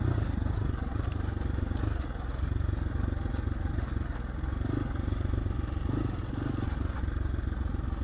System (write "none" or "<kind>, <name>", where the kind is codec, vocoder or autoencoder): none